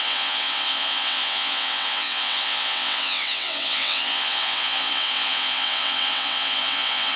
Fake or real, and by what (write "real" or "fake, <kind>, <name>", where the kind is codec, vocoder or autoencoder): fake, vocoder, WaveNeXt